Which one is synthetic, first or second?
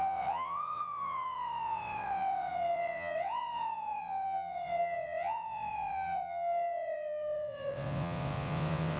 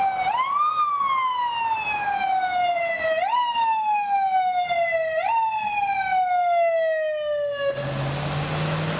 first